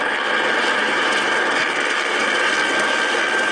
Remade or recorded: recorded